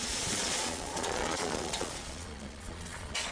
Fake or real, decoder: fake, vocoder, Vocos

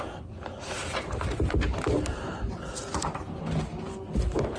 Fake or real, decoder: real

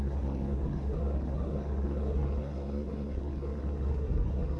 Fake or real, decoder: fake, codec, SNAC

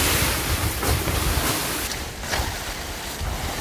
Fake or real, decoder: real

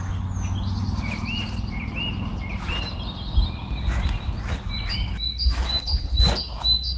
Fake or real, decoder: real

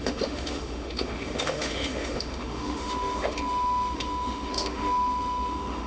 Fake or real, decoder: fake, autoencoder, DAC-VAE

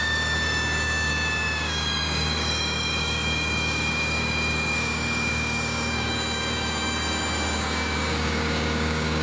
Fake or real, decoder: fake, codec, DAC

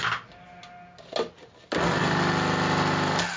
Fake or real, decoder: real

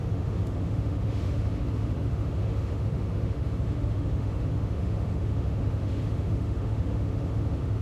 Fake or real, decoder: fake, autoencoder, DAC-VAE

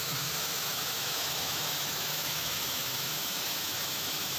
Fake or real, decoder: fake, autoencoder, DAC-VAE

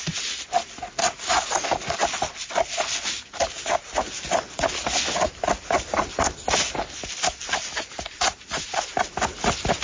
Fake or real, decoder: real